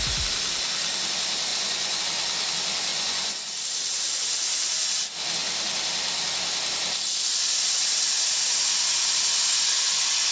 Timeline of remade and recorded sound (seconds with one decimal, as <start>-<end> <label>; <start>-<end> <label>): 0.0-1.5 recorded; 1.5-2.0 remade; 2.0-2.9 recorded; 2.9-3.6 remade; 3.6-10.3 recorded